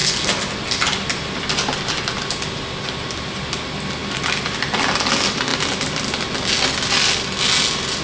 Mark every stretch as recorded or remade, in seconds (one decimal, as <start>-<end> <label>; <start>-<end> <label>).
0.0-8.0 recorded